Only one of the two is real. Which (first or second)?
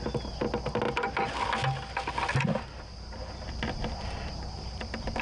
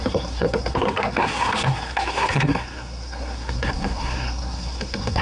first